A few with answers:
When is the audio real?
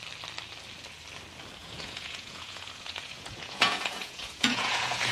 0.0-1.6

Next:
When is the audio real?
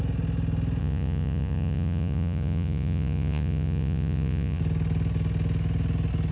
0.0-0.8; 4.6-6.3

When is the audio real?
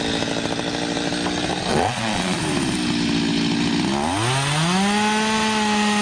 0.0-1.7; 2.4-6.0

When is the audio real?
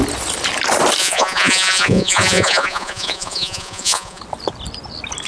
0.0-1.0; 4.2-5.3